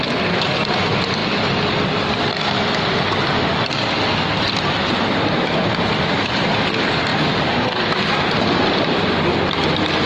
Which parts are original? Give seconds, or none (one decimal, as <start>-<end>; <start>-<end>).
0.0-10.1